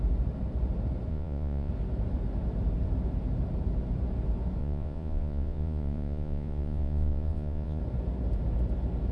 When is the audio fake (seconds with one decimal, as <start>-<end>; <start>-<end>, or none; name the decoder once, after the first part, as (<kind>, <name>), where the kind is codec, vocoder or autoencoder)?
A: 1.1-1.7 (vocoder, Vocos); 4.6-7.8